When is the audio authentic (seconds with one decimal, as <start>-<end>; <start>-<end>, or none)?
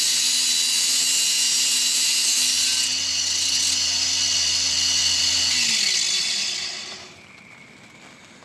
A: 0.0-8.4